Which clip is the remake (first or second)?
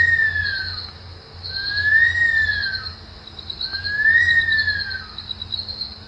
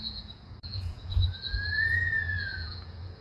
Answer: second